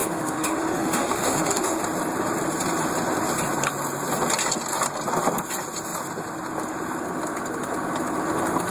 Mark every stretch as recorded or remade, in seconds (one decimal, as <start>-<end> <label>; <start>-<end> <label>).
0.0-1.8 remade; 1.8-8.7 recorded